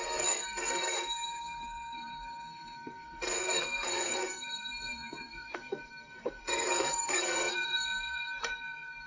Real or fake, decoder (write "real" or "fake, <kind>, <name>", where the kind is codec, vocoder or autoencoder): fake, codec, SNAC